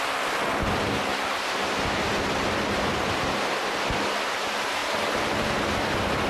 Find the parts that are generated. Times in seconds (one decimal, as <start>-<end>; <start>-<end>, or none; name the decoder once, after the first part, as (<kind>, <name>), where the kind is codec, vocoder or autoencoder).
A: none